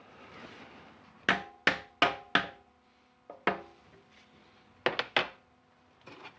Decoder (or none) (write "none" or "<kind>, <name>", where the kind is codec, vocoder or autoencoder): none